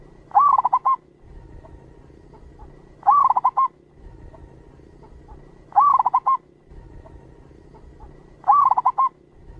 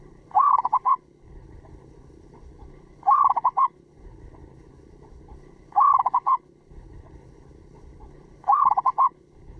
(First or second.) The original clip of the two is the first